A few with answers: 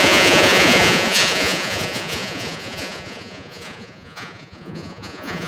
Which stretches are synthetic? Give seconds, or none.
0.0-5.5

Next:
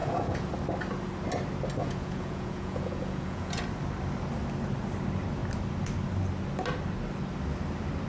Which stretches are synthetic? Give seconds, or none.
0.0-0.5; 1.8-3.6

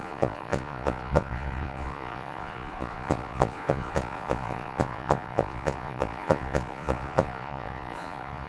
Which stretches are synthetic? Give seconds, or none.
0.0-8.5